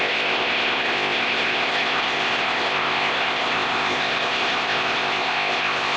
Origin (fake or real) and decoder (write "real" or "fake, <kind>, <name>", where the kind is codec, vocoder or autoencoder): fake, codec, ZipCodec